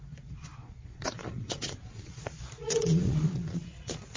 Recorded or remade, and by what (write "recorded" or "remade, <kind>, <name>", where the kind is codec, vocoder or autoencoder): remade, vocoder, Vocos